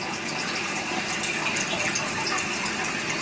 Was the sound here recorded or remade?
recorded